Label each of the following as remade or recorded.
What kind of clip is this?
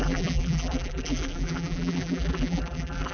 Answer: remade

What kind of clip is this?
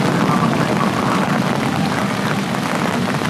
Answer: recorded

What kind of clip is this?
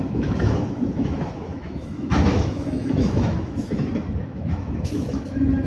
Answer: remade